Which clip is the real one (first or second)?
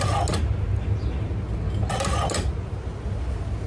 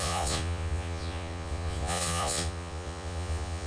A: first